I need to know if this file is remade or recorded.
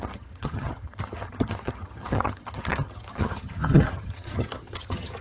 remade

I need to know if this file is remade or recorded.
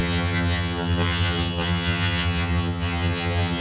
remade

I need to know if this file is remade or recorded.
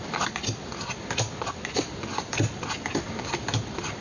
recorded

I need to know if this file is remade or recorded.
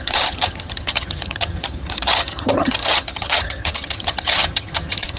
remade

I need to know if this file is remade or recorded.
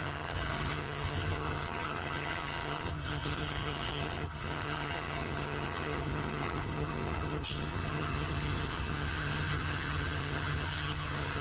remade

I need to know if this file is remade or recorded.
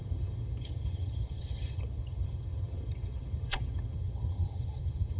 remade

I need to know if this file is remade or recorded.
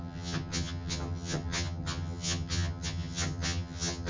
remade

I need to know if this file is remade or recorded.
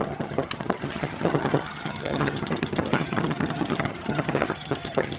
remade